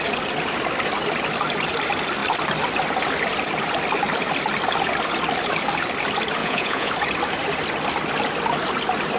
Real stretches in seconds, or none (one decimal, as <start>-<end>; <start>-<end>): 0.0-6.4; 6.9-9.2